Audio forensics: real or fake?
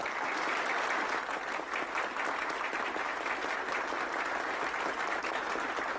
real